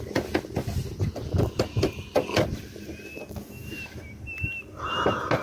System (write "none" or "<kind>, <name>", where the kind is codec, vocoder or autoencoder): none